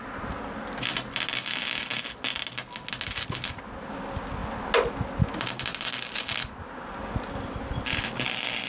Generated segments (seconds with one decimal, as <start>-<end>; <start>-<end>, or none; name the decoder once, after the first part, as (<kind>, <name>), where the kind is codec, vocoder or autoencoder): none